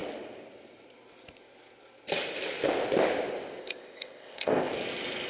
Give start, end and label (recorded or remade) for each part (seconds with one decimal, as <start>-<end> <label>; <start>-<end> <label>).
0.0-3.6 recorded; 3.6-4.7 remade; 4.7-5.3 recorded